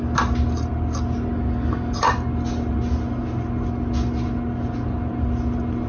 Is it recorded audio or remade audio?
recorded